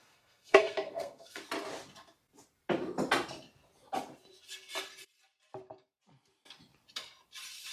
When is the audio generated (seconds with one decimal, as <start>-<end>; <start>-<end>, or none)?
0.0-1.4

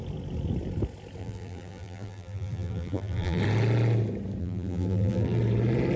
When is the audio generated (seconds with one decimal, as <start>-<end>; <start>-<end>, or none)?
1.2-3.4; 4.4-5.4

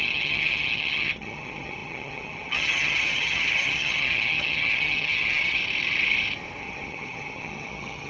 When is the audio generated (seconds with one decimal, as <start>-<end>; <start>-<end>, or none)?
0.0-5.6; 6.6-8.1

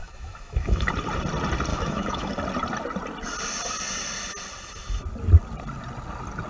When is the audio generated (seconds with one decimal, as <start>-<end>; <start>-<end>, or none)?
0.0-0.9; 1.7-2.3

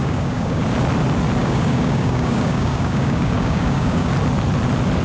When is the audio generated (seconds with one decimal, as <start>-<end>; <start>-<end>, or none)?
0.0-0.6; 1.4-4.1

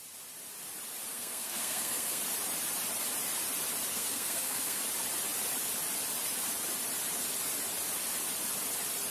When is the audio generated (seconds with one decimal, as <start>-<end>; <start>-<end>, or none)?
1.1-2.2; 3.9-4.8

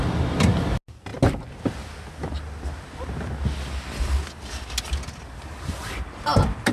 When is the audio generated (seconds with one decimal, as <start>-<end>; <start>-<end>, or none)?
none